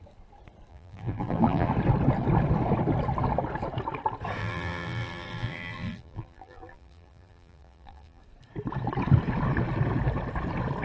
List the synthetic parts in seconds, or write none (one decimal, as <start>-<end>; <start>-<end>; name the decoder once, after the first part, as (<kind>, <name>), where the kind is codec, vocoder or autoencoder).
0.7-1.7 (vocoder, BigVGAN v2); 4.4-8.2